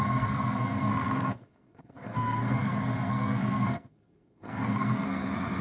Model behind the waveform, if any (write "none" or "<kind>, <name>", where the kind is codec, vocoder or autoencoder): codec, SNAC